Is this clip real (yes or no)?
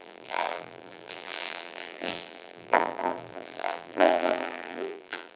no